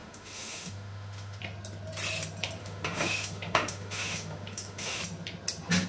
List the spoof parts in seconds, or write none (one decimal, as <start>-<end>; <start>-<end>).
0.0-1.4; 2.6-5.0